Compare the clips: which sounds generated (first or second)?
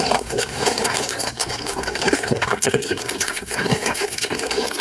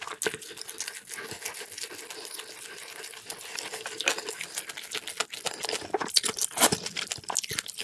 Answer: first